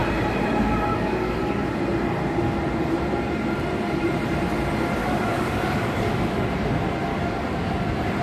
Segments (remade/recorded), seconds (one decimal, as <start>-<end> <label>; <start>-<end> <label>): 0.0-0.9 recorded; 0.9-1.7 remade; 1.7-5.0 recorded; 5.0-6.5 remade; 6.5-7.1 recorded; 7.1-7.7 remade; 7.7-8.2 recorded